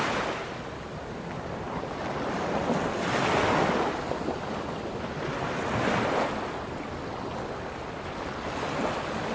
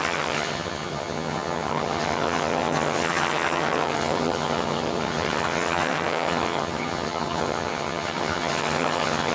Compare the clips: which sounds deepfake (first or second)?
second